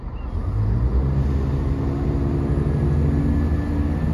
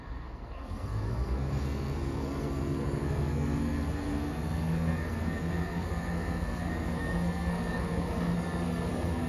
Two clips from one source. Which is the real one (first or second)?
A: first